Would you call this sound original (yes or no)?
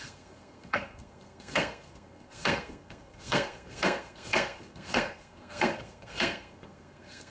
no